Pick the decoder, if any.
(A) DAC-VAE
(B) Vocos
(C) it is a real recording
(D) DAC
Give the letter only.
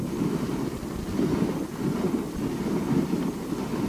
C